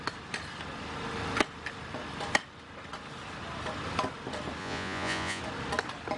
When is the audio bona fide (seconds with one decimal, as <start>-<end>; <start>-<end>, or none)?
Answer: 0.0-4.6; 5.4-6.2